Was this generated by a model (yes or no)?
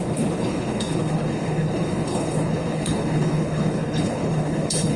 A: yes